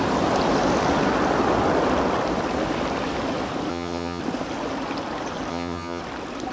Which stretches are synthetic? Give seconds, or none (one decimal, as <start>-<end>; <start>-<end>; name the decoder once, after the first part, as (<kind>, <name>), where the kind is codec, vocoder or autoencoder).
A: 3.7-4.2 (vocoder, HiFi-GAN); 5.5-6.0